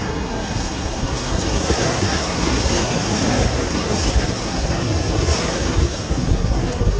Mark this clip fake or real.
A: fake